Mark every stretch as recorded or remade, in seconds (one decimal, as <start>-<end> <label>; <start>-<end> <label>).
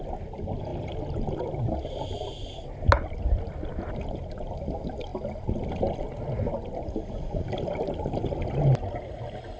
0.0-9.6 recorded